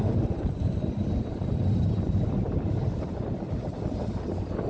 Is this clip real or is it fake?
real